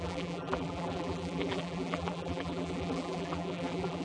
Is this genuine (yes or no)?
no